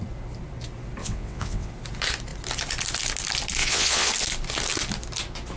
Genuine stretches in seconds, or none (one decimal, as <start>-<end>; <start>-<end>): 0.0-1.0; 1.7-3.6; 4.1-5.6